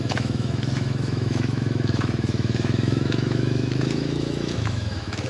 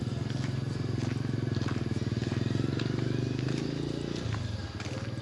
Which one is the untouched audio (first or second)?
second